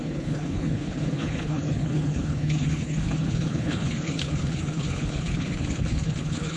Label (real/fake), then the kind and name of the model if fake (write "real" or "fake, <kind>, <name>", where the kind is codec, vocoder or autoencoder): fake, codec, HILCodec